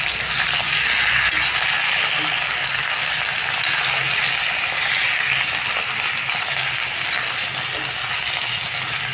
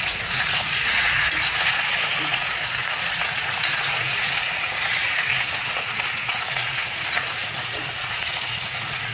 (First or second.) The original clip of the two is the first